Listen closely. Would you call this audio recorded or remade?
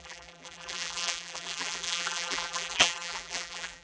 remade